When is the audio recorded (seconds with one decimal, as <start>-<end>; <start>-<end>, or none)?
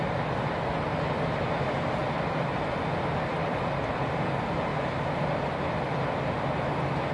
0.0-2.0; 2.8-4.7; 5.6-7.1